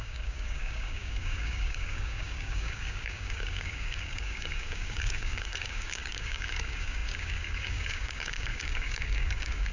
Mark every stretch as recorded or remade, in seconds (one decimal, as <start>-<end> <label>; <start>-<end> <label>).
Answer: 0.0-9.7 remade